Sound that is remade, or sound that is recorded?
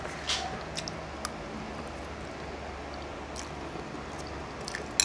recorded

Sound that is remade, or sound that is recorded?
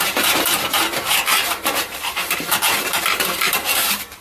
remade